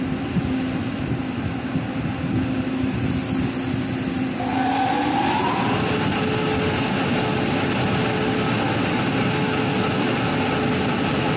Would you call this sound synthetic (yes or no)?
no